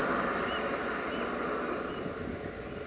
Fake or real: real